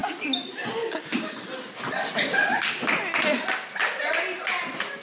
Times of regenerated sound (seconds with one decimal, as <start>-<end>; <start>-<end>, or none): none